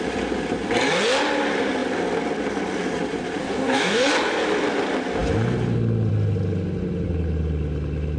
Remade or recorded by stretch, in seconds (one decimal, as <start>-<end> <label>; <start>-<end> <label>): 0.0-3.4 recorded; 3.4-4.1 remade; 4.1-8.2 recorded